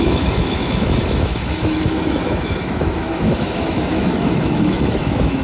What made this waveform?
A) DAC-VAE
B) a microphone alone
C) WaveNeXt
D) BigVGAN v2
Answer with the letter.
A